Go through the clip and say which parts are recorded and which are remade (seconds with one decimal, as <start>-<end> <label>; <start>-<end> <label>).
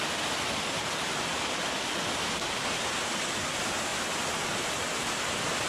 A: 0.0-5.7 recorded